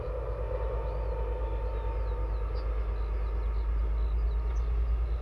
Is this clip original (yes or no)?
yes